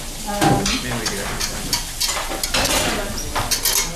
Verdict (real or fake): real